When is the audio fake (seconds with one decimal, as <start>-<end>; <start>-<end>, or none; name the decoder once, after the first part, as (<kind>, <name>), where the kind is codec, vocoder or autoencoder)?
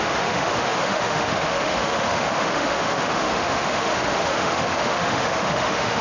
0.0-6.0 (autoencoder, DAC-VAE)